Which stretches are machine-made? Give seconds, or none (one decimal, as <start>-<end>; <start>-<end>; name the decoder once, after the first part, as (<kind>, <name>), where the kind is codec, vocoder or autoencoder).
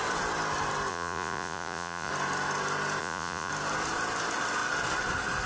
0.9-2.1 (vocoder, Vocos); 3.0-3.5